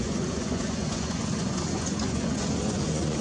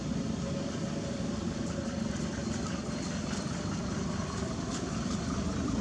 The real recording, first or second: second